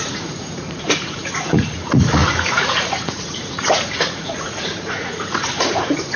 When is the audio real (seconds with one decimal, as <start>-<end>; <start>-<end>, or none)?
none